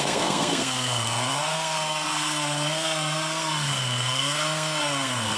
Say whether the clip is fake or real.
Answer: fake